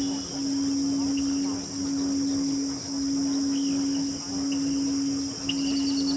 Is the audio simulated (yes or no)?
no